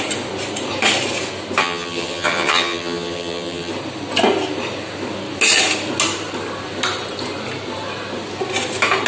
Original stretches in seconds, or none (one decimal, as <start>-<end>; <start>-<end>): 0.0-1.6; 3.7-9.1